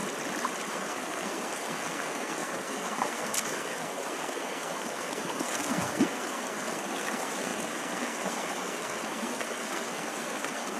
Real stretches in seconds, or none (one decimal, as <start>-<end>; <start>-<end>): 0.0-0.7